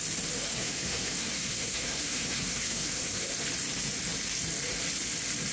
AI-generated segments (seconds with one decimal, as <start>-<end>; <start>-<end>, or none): 0.5-3.3